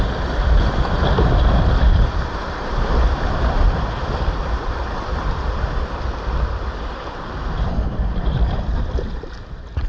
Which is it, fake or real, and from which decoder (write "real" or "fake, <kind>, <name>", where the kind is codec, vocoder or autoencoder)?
fake, vocoder, BigVGAN v2